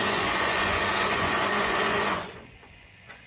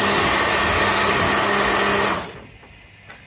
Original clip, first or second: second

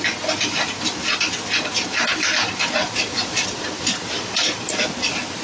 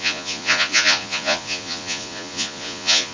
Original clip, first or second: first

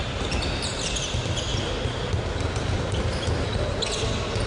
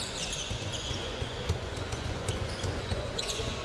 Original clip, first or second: first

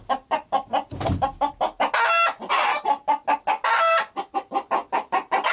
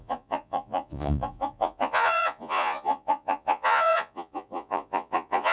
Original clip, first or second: first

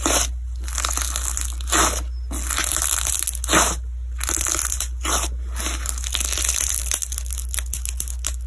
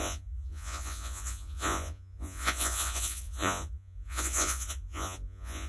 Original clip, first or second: first